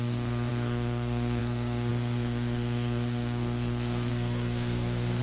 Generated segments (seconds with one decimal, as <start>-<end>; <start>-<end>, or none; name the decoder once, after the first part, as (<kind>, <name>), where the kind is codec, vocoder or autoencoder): 0.0-5.2 (codec, SNAC)

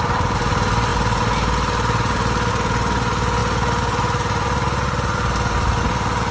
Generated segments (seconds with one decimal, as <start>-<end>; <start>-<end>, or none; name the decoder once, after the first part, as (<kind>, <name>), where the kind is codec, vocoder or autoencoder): none

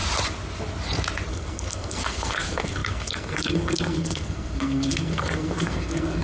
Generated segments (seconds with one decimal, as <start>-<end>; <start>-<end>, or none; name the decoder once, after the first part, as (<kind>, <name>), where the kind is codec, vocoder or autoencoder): 1.3-6.2 (codec, SNAC)